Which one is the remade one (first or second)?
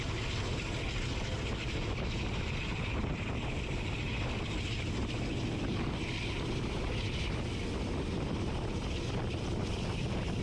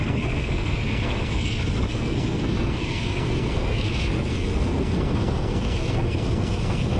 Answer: second